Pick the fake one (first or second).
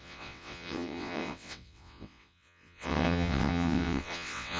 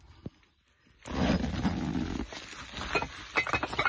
first